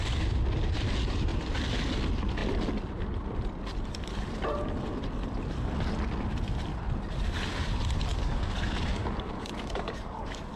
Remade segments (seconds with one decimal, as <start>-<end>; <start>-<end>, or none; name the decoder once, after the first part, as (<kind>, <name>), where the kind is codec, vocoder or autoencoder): 8.1-10.6 (codec, DAC)